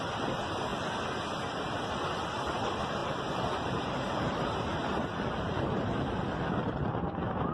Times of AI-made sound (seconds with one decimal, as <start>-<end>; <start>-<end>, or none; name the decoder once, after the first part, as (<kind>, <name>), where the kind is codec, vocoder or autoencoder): 3.0-7.5 (vocoder, BigVGAN v2)